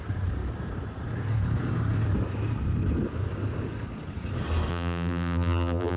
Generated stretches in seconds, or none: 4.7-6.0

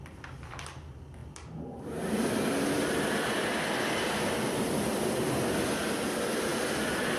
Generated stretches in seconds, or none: 6.5-7.2

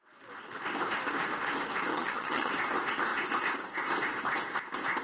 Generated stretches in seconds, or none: 1.9-2.5

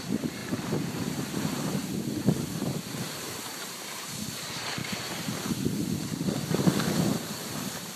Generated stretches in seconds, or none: 0.0-1.8; 2.4-4.8; 7.1-8.0